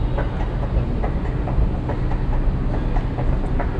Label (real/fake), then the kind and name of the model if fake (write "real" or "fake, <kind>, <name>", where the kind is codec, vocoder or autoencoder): real